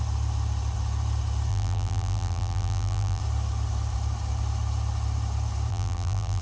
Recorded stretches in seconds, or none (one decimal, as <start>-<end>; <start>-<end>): 0.0-1.5; 3.2-5.7